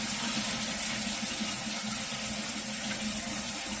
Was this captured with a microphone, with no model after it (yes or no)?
yes